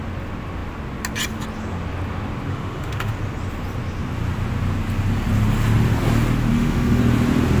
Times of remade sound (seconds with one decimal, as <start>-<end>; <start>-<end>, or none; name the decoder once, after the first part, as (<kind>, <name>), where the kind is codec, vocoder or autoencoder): 2.5-3.1 (autoencoder, DAC-VAE); 6.5-7.0